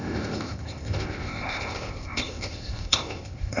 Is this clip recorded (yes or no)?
no